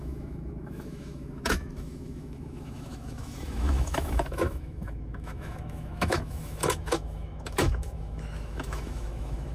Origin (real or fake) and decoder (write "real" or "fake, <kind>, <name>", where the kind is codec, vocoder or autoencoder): fake, autoencoder, DAC-VAE